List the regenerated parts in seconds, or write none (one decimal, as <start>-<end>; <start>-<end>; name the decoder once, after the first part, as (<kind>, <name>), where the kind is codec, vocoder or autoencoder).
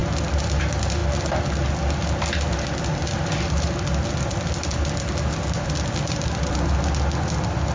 none